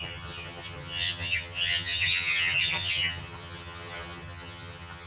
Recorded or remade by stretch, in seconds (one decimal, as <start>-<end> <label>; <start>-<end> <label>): 0.0-5.1 remade